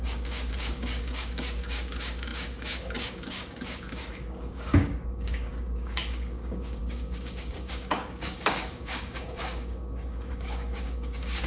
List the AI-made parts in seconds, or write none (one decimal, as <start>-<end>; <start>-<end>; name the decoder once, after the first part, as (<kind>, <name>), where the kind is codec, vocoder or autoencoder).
0.0-11.5 (codec, DAC)